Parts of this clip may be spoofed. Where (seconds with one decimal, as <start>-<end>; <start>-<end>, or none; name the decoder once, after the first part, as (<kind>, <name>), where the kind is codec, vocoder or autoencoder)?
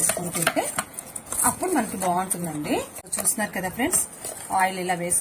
0.0-3.0 (vocoder, Vocos)